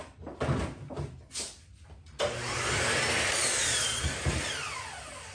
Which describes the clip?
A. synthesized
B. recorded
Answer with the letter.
B